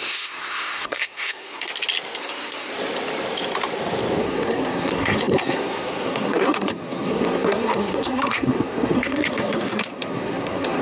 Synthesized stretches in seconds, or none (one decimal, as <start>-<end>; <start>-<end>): 0.0-1.7; 2.2-2.7; 4.2-10.8